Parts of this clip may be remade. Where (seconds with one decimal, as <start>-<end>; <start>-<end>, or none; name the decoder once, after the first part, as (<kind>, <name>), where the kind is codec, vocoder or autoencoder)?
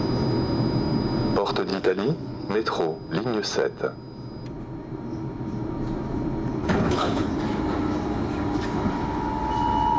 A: 1.7-2.5 (codec, HILCodec); 6.6-7.3